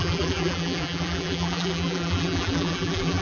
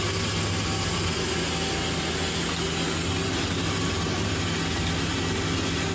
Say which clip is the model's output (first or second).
first